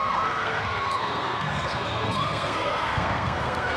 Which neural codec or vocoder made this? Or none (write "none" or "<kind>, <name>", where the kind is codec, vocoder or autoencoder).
codec, SNAC